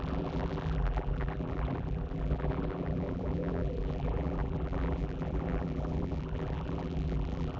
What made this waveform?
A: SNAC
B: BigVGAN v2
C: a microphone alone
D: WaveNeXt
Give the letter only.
B